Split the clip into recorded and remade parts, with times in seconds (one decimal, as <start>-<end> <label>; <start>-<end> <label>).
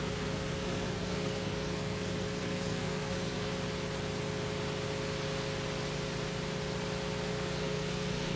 0.0-3.5 remade; 3.5-7.3 recorded; 7.3-8.4 remade